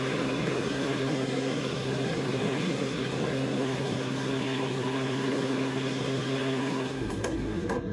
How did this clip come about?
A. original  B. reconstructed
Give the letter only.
B